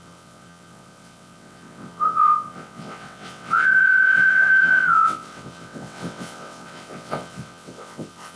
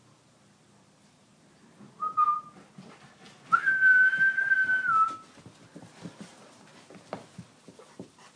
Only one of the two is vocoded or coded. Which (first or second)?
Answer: first